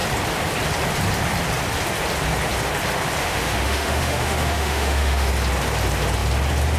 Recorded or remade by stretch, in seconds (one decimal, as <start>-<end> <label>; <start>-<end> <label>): 0.0-3.2 recorded; 3.2-5.3 remade; 5.3-6.8 recorded